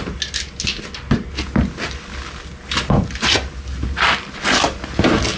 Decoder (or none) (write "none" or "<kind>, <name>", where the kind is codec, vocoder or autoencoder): none